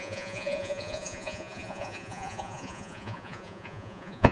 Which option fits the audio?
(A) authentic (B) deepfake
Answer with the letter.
B